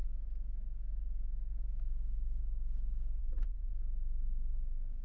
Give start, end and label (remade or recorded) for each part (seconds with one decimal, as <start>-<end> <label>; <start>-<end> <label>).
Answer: 0.0-3.2 recorded; 3.2-3.7 remade; 3.7-5.0 recorded